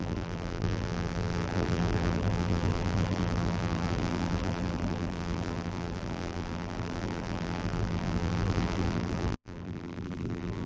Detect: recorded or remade remade